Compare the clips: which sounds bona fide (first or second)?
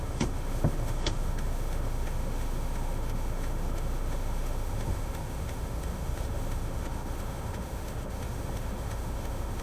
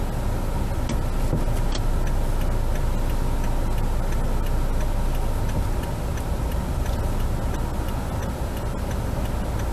second